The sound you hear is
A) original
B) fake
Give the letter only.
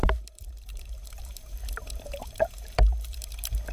B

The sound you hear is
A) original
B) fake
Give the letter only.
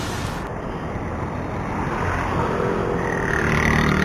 A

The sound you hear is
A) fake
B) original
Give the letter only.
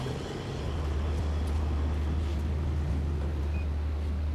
B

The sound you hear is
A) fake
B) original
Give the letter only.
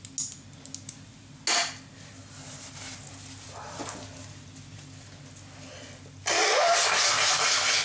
B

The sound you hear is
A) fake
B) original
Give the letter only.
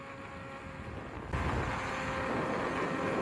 B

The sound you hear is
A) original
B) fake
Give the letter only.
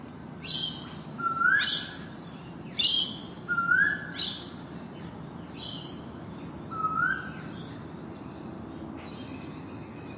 A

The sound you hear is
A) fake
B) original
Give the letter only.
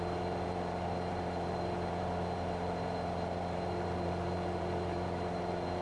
A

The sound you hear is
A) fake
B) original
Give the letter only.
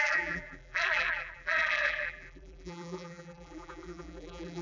A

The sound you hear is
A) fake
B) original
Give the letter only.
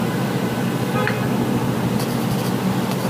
B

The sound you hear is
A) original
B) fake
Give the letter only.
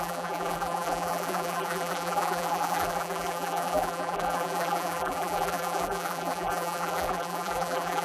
B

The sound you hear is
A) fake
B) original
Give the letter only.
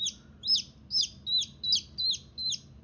B